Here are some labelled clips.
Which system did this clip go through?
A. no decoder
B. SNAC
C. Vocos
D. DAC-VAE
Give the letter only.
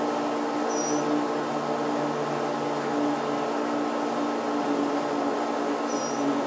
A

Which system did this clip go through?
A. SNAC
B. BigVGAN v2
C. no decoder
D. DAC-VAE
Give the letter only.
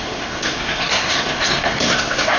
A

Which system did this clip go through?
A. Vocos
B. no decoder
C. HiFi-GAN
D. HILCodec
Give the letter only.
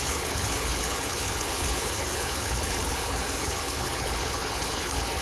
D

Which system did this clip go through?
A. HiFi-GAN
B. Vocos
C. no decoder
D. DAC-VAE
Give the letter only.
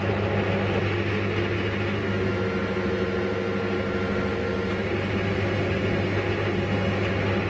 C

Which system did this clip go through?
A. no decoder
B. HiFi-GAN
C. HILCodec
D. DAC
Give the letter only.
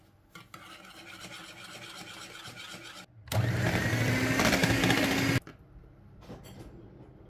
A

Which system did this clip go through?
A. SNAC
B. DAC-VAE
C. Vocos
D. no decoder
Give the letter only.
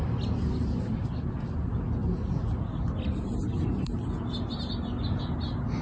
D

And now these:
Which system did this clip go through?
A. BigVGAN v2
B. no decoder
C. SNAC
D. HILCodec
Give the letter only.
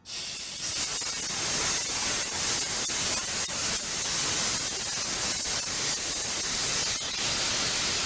B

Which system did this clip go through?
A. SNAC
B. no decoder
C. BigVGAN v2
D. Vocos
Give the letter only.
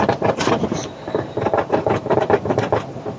C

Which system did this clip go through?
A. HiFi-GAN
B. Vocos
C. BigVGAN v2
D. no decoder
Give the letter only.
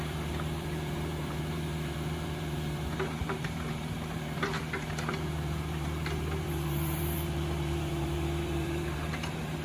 C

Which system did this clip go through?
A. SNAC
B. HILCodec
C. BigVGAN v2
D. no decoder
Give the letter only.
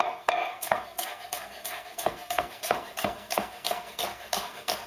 A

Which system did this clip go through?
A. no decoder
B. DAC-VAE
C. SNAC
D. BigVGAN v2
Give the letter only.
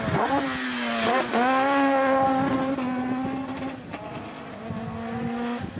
A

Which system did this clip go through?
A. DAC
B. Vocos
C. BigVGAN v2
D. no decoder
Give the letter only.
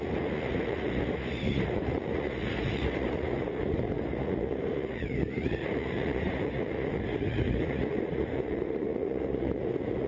B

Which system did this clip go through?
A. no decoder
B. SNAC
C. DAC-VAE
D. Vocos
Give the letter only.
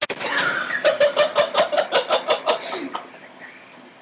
A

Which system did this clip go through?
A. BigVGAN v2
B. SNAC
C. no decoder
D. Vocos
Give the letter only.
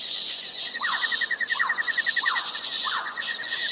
D